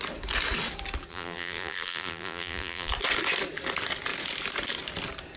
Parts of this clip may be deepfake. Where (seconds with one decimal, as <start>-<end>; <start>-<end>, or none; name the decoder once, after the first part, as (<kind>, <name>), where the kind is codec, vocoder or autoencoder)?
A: 1.1-2.9 (vocoder, BigVGAN v2)